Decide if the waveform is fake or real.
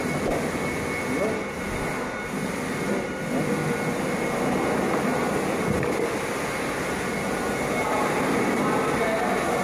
real